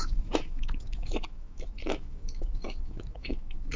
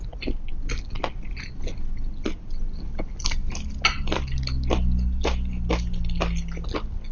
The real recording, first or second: second